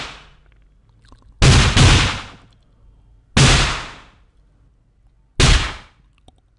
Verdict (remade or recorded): recorded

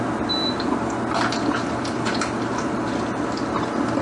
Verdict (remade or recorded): remade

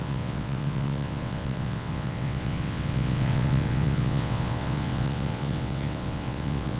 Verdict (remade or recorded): remade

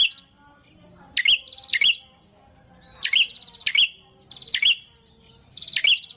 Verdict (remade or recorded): recorded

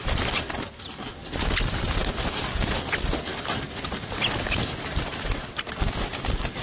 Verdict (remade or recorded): recorded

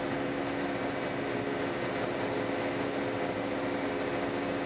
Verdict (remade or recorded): recorded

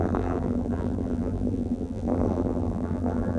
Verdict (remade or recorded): remade